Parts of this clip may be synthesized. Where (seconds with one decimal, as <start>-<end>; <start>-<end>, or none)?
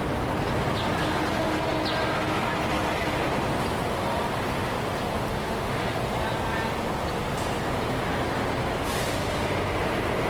5.3-6.0